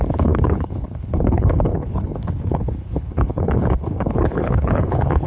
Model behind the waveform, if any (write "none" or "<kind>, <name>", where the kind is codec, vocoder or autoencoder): codec, HILCodec